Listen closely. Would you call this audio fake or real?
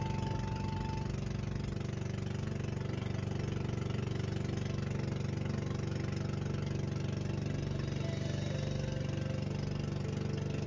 real